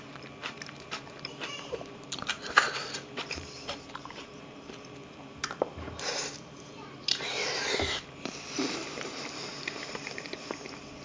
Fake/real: fake